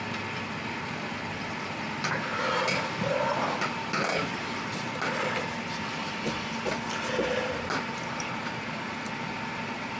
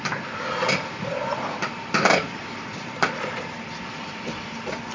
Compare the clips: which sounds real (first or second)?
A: first